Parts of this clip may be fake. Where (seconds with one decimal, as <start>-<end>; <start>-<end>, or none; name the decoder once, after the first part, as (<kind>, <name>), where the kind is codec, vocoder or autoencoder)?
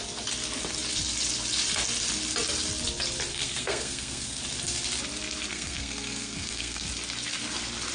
3.3-4.4 (codec, SNAC); 5.5-6.9